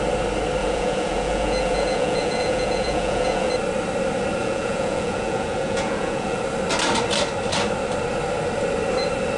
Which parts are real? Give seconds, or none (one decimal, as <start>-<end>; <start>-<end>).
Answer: 0.0-0.6; 3.5-4.4; 6.4-9.4